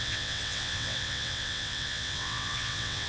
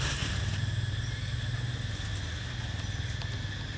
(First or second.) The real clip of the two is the second